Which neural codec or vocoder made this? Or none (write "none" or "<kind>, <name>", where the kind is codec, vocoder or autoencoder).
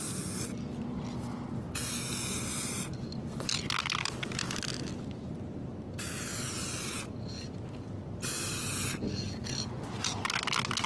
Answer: none